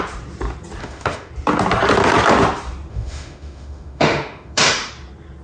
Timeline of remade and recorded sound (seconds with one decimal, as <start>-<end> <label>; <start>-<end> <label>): 0.0-0.8 recorded; 0.8-1.3 remade; 1.3-2.9 recorded; 2.9-4.9 remade; 4.9-5.4 recorded